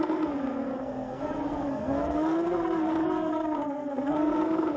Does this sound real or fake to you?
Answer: fake